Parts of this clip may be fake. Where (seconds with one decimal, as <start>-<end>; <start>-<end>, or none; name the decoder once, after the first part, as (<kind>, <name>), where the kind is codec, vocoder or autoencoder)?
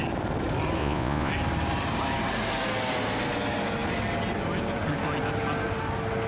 0.8-1.3 (vocoder, Vocos)